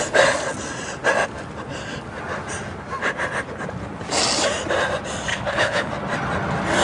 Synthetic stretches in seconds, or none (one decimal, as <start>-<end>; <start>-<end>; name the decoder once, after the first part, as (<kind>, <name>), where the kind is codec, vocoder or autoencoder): 5.3-5.9 (codec, HILCodec)

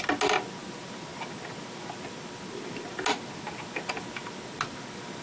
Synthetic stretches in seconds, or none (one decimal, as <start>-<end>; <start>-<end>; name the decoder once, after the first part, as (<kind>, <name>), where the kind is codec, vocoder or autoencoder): none

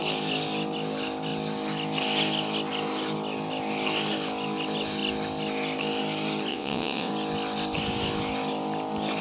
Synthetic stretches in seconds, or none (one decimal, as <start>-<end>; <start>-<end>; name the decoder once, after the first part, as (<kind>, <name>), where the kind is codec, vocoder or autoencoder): 6.5-7.1 (vocoder, WaveNeXt)

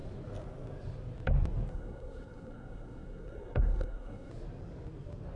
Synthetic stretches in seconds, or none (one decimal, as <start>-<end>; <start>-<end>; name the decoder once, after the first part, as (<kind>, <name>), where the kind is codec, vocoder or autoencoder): 1.7-4.3 (codec, SNAC)

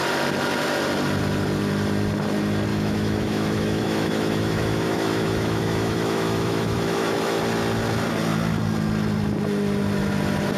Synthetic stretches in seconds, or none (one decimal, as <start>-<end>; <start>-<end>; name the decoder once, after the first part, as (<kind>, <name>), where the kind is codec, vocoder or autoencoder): 2.7-7.4 (autoencoder, DAC-VAE)

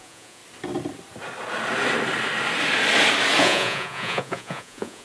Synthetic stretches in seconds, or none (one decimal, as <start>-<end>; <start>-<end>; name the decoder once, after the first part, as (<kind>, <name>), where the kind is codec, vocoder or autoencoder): 0.0-0.4 (vocoder, Vocos); 3.4-5.0

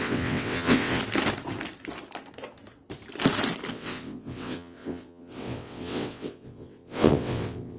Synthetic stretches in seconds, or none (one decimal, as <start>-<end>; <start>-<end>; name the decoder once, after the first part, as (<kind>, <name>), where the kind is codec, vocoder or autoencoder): 0.0-1.0 (vocoder, WaveNeXt); 3.7-7.8